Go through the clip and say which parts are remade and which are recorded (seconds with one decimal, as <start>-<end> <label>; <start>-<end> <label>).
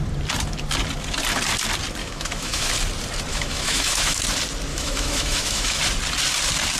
0.0-2.0 recorded; 2.0-2.7 remade; 2.7-3.3 recorded; 3.3-4.2 remade; 4.2-4.7 recorded; 4.7-5.8 remade; 5.8-6.8 recorded